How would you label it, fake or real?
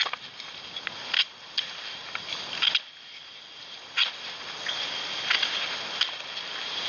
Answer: real